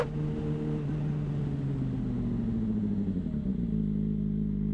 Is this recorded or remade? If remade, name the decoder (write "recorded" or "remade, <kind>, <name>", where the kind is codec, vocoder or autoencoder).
recorded